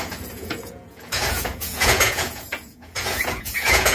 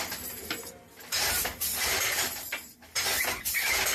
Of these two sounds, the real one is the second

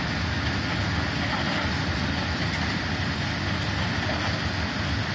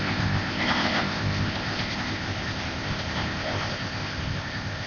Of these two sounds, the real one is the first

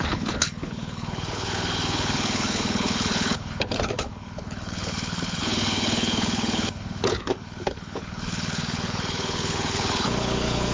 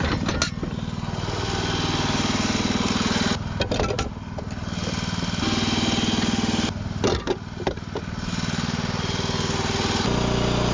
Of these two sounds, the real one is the second